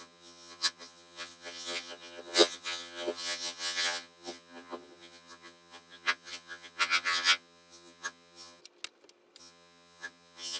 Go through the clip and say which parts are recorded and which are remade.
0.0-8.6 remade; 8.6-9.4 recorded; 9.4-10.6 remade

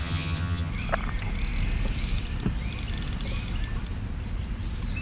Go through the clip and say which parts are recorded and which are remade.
0.0-0.7 remade; 0.7-5.0 recorded

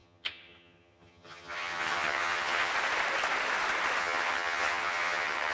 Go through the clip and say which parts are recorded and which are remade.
0.0-2.7 remade; 2.7-4.0 recorded; 4.0-5.5 remade

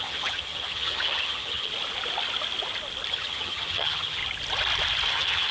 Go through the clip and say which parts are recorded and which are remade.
0.0-1.7 remade; 1.7-3.1 recorded; 3.1-4.2 remade; 4.2-5.1 recorded; 5.1-5.5 remade

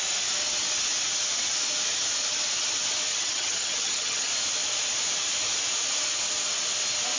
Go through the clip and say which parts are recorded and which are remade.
0.0-3.1 recorded; 3.1-4.3 remade; 4.3-7.2 recorded

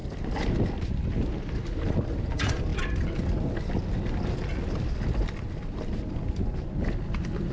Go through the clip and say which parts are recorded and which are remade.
0.0-7.5 recorded

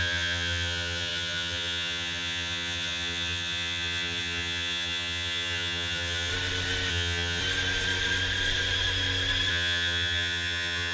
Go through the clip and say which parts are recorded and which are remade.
0.0-6.3 remade; 6.3-6.9 recorded; 6.9-7.4 remade; 7.4-9.5 recorded; 9.5-10.9 remade